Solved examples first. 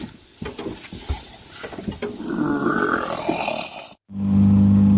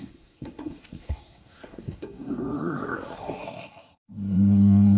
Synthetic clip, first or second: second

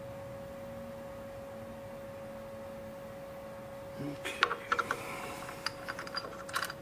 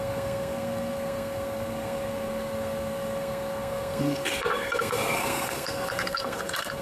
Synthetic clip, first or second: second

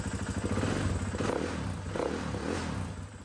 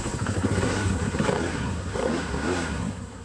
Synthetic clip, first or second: second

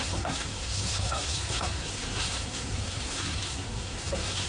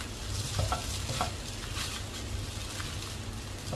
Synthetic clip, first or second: first